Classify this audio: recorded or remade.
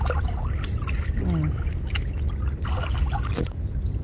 recorded